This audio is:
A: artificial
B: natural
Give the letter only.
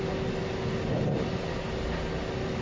B